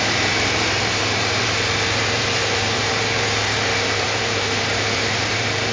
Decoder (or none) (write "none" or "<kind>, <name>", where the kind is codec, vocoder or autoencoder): vocoder, BigVGAN v2